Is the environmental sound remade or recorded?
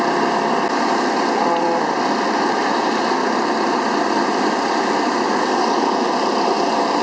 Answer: recorded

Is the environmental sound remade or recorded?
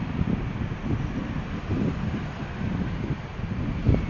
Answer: recorded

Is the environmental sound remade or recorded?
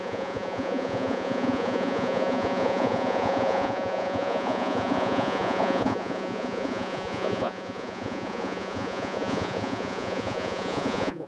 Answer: remade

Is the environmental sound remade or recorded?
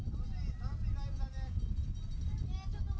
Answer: recorded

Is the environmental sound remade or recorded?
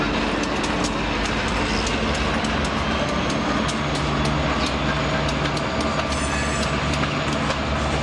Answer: recorded